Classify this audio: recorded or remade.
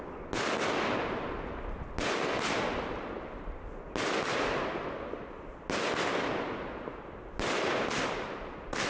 recorded